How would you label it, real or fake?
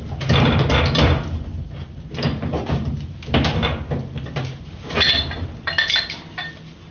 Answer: real